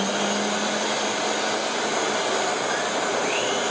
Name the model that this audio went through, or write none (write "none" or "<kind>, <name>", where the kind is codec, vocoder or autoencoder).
none